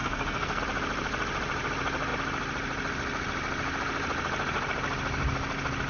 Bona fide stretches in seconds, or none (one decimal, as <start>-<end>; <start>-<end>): 0.6-5.9